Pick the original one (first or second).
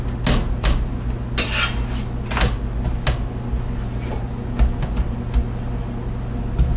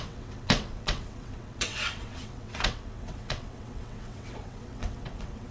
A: first